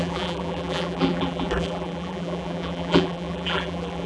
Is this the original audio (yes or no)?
no